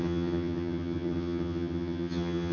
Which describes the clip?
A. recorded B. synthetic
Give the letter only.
B